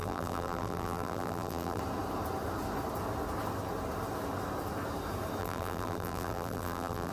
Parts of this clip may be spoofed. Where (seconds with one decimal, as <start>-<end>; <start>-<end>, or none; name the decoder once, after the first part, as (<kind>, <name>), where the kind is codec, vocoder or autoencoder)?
0.0-1.8 (vocoder, BigVGAN v2); 5.4-7.1